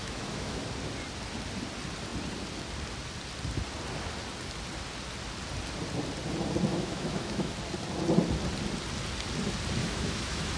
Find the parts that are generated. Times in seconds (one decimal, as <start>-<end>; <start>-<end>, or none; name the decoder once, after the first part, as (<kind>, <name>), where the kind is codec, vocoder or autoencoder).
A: 0.0-0.6 (autoencoder, DAC-VAE); 6.7-7.5; 9.8-10.6